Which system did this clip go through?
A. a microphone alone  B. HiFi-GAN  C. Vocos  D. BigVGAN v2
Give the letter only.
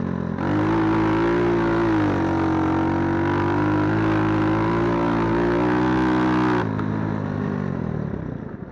A